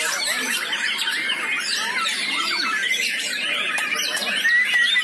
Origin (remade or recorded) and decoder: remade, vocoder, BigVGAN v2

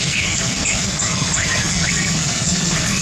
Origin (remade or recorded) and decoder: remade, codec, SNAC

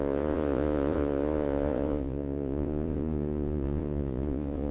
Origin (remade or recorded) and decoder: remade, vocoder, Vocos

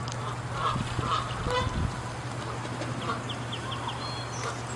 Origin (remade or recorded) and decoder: recorded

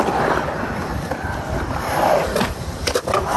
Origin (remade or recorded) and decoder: recorded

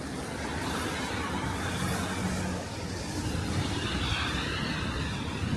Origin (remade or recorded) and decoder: recorded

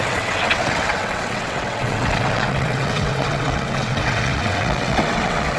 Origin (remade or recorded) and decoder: remade, vocoder, WaveNeXt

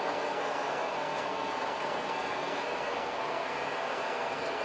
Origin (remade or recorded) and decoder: remade, codec, SNAC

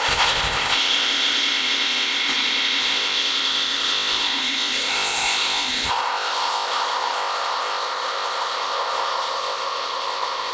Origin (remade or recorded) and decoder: remade, codec, ZipCodec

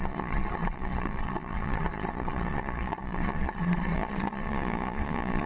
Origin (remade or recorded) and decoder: remade, vocoder, Vocos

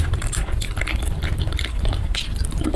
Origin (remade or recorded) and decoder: remade, vocoder, BigVGAN v2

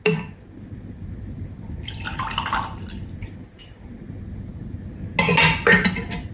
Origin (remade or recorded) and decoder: recorded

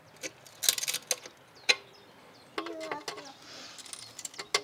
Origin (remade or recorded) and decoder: recorded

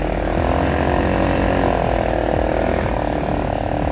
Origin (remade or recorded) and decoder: recorded